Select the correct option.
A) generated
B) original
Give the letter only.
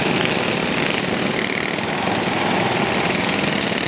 B